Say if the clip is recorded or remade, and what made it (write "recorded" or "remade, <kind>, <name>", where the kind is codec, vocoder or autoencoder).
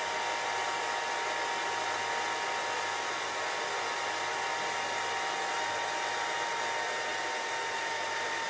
recorded